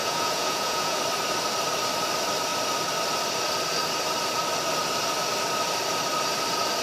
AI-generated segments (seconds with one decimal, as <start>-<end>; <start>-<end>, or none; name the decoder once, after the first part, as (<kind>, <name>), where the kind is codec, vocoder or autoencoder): 0.0-1.0 (vocoder, Vocos)